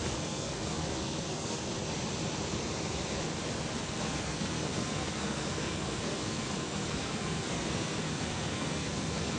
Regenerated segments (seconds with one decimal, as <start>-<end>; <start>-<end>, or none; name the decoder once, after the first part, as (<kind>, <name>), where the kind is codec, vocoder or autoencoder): 0.0-1.7 (codec, SNAC); 3.8-9.4